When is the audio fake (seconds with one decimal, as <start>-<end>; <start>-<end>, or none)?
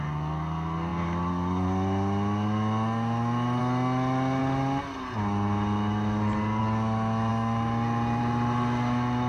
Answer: none